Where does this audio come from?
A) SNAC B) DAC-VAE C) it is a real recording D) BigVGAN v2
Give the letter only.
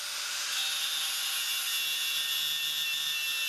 C